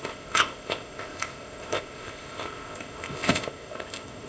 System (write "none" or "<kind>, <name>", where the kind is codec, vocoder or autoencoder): codec, ZipCodec